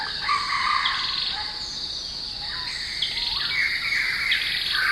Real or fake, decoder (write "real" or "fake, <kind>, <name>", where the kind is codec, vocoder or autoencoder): real